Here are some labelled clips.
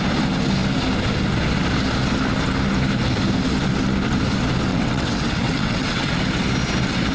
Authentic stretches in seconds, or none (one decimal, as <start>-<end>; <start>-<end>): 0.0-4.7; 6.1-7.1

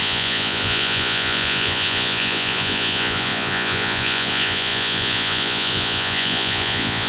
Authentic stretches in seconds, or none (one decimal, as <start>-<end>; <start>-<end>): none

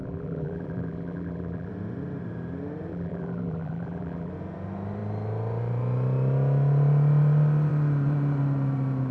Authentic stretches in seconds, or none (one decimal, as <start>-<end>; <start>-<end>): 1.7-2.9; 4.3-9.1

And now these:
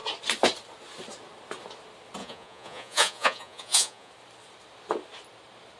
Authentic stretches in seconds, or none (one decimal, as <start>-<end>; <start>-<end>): 0.0-2.2; 4.1-5.8

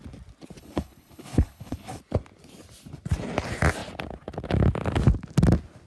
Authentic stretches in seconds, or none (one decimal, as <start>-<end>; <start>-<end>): 0.0-0.6; 2.0-5.9

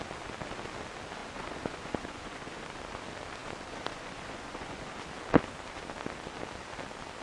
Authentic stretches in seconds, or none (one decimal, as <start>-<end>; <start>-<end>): 0.0-1.2; 2.8-3.4; 4.9-7.2